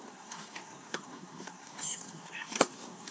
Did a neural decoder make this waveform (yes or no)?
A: yes